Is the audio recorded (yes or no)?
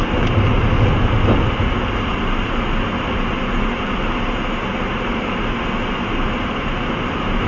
yes